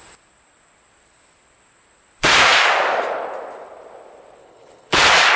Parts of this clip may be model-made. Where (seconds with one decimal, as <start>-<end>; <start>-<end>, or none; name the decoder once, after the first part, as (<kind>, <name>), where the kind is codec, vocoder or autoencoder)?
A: 4.4-5.0 (codec, HILCodec)